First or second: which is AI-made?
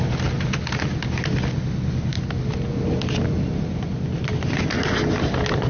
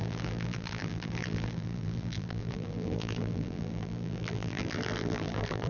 second